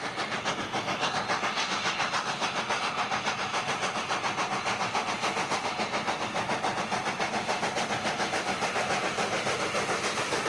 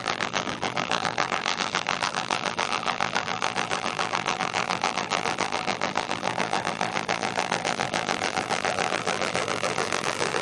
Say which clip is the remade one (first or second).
second